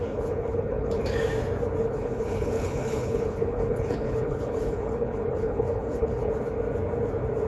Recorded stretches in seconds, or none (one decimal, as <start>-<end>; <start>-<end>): 1.0-1.8; 6.3-7.5

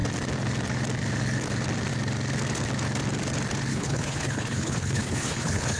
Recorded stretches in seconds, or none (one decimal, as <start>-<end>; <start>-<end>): 0.0-3.7

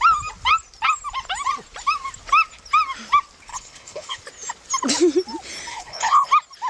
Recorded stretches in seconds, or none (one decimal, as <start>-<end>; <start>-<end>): 0.0-3.5; 4.2-5.7; 6.3-6.7

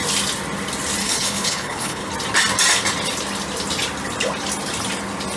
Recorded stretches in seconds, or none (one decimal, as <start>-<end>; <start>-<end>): 0.0-1.0; 2.1-5.4